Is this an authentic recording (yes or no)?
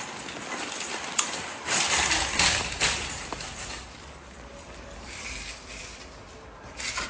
yes